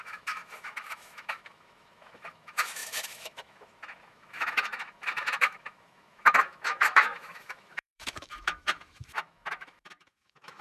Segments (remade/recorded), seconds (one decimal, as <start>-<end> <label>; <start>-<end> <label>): 0.0-10.6 remade